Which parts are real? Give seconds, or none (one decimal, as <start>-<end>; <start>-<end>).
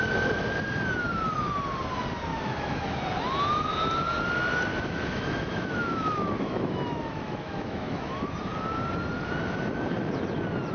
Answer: 0.0-2.3; 3.0-4.7; 8.3-10.7